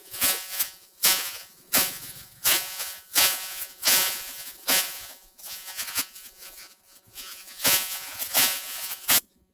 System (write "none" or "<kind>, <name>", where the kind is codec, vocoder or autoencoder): vocoder, Vocos